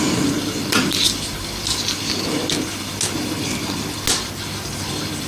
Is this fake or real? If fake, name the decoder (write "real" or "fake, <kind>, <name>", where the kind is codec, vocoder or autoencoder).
real